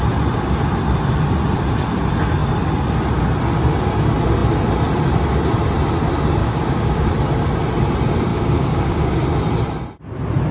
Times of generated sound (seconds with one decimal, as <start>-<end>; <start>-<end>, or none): 6.4-7.1; 8.3-9.2